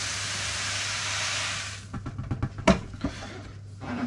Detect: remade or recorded recorded